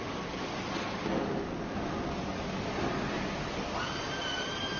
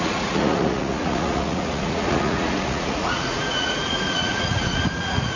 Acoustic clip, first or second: first